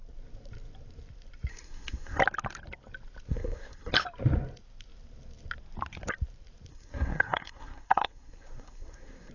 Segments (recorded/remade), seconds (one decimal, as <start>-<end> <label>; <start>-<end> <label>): 0.0-1.5 recorded; 1.5-2.2 remade; 2.2-3.3 recorded; 3.3-3.9 remade; 3.9-6.7 recorded; 6.7-9.3 remade